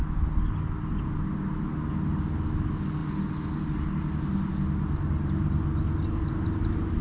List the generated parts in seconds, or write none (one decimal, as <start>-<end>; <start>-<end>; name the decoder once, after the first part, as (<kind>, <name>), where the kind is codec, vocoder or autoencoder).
none